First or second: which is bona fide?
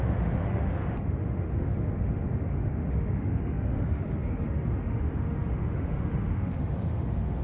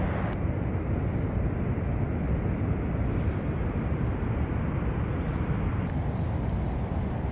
second